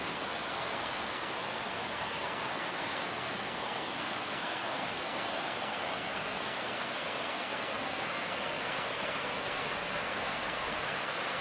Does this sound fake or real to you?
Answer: fake